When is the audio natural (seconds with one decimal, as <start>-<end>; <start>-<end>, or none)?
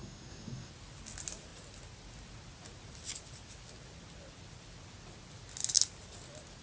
0.7-6.6